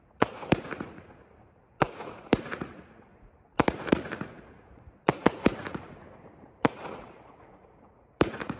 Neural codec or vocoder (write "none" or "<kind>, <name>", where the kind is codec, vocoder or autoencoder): vocoder, Vocos